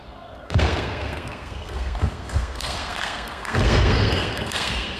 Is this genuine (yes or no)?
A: no